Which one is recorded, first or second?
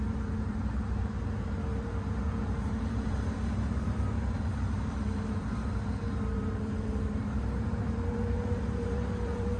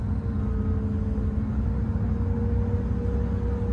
second